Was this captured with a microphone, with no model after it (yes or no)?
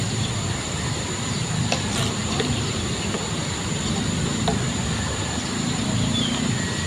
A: no